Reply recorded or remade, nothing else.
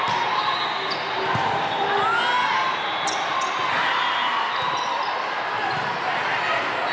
recorded